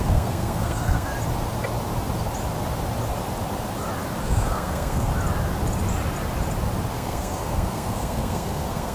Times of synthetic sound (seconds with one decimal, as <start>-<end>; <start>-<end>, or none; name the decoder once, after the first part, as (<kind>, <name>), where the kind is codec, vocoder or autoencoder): 0.0-1.1 (codec, SNAC); 4.2-5.1; 6.9-8.9